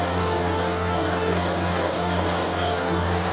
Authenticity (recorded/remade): remade